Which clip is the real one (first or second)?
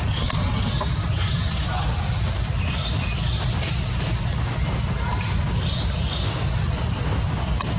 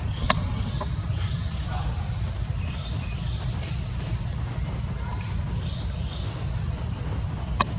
first